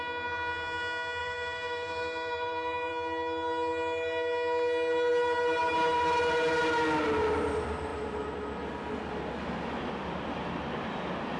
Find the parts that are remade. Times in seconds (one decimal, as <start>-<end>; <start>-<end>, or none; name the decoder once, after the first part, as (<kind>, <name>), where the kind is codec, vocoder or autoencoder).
1.2-2.9 (vocoder, BigVGAN v2)